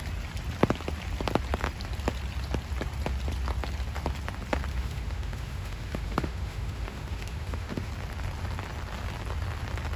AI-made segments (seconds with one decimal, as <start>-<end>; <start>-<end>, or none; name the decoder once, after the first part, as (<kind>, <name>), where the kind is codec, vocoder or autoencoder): 4.7-7.9 (autoencoder, DAC-VAE)